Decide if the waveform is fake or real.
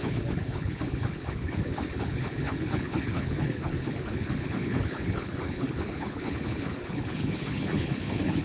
fake